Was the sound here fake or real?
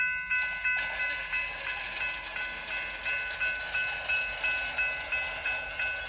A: real